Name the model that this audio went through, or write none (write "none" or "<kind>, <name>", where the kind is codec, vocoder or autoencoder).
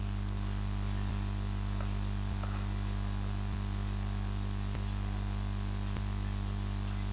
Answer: none